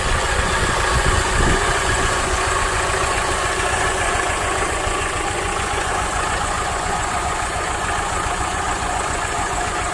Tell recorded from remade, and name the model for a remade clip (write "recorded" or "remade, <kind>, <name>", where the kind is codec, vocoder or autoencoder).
remade, vocoder, Vocos